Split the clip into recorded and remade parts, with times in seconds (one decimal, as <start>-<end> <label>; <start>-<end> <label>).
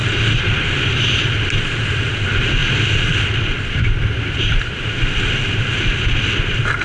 0.0-6.8 recorded